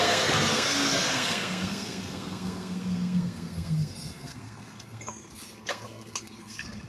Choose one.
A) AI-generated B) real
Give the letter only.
A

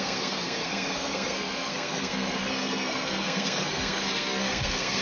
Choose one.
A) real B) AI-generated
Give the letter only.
B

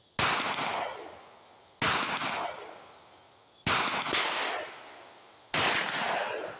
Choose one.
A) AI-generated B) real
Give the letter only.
B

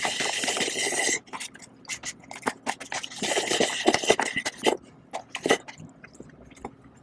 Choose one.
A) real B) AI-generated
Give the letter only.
A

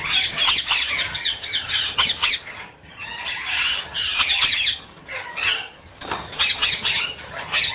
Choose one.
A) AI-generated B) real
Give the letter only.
A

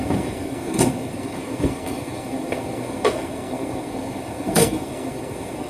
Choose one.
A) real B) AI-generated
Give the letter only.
B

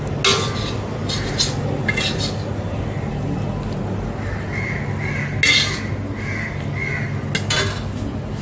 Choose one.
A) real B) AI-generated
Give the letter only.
A